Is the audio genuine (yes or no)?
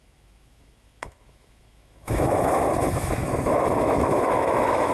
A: no